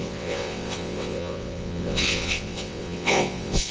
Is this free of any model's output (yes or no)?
no